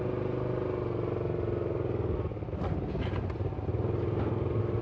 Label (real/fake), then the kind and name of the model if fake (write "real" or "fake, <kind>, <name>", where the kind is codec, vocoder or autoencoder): real